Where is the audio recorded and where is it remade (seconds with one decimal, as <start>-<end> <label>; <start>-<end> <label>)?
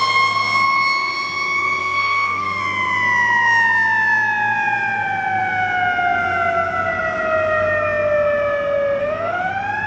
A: 0.0-1.8 recorded; 1.8-2.6 remade; 2.6-9.0 recorded; 9.0-9.5 remade; 9.5-9.9 recorded